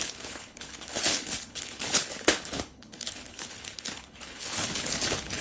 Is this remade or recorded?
remade